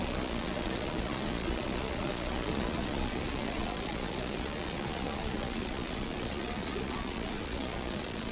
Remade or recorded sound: remade